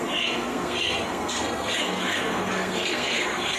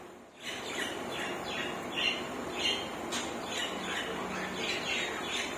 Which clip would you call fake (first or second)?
first